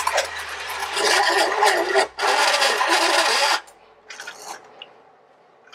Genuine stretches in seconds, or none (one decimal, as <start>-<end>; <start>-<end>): 0.8-4.2